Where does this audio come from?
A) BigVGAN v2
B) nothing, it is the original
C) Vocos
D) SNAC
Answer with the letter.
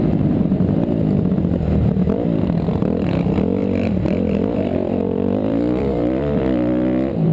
A